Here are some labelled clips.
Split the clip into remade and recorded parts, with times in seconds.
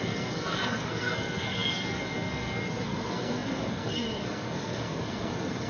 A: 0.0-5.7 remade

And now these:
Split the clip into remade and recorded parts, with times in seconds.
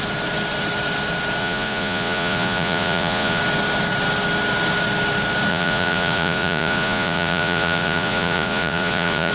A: 0.0-1.4 recorded; 1.4-3.4 remade; 3.4-5.5 recorded; 5.5-9.3 remade